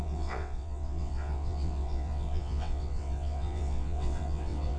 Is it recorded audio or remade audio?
remade